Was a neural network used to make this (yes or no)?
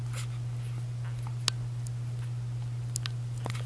no